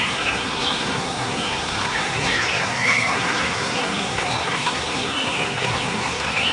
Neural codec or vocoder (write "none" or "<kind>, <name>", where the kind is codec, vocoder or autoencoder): codec, SNAC